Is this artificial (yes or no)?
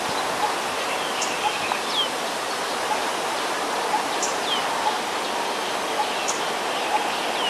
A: no